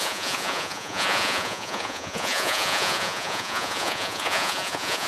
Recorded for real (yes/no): no